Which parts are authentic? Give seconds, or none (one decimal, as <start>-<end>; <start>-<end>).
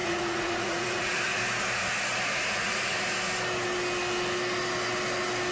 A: 1.4-2.5; 2.9-5.5